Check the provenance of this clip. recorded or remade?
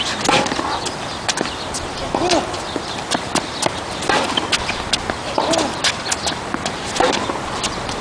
recorded